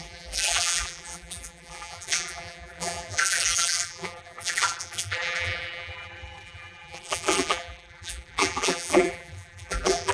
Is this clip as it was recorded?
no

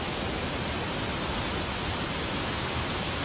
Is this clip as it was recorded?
yes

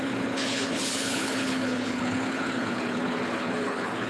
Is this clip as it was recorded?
no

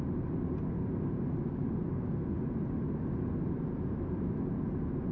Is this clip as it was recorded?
yes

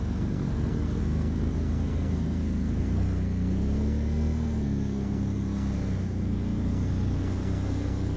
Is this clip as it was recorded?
no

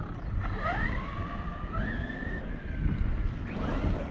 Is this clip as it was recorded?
yes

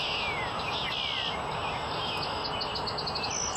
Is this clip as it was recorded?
yes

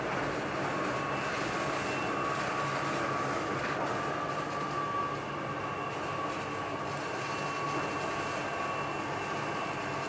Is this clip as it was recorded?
yes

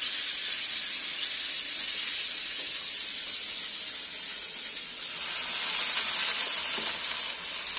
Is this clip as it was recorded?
yes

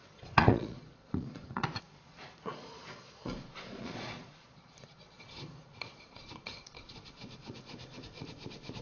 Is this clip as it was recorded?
no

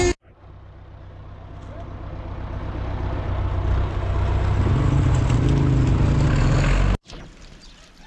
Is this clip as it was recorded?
yes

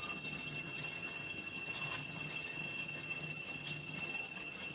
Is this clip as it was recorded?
no